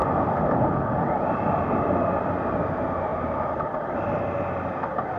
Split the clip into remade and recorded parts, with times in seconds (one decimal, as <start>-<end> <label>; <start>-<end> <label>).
0.0-3.1 recorded; 3.1-5.2 remade